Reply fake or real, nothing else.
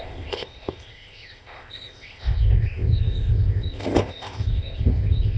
fake